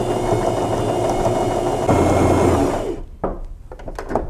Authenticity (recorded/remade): recorded